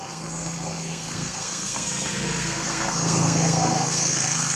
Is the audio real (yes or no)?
no